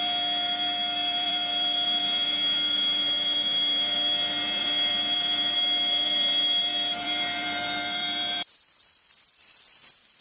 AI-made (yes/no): yes